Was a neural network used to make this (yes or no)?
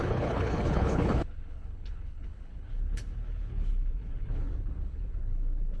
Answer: yes